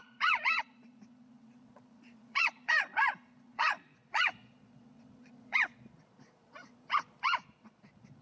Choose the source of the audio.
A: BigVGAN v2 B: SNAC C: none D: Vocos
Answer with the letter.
D